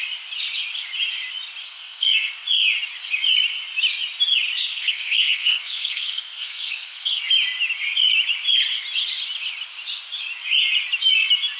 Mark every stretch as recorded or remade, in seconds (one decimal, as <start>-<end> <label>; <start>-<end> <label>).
0.0-1.6 recorded; 1.6-2.3 remade; 2.3-4.6 recorded; 4.6-7.2 remade; 7.2-11.6 recorded